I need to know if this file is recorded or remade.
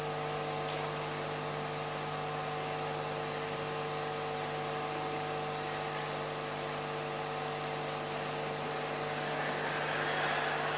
recorded